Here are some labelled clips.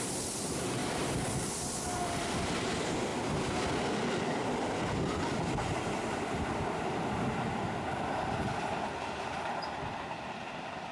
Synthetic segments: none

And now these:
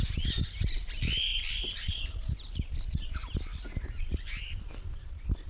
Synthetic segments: none

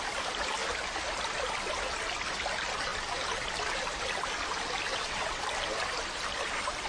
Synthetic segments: 4.9-5.4 (vocoder, WaveNeXt)